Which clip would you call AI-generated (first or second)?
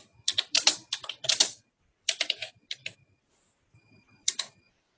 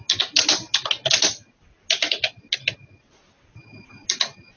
first